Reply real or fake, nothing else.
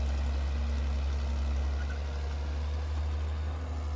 real